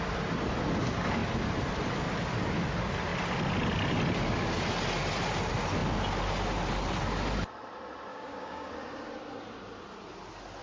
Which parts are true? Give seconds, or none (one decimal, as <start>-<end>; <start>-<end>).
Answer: 0.0-8.1; 8.7-10.6